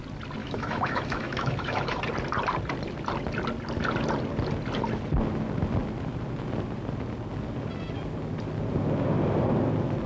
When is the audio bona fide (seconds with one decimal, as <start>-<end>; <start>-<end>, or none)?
0.0-0.4; 2.0-10.1